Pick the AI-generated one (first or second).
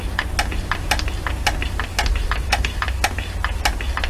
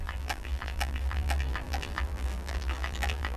second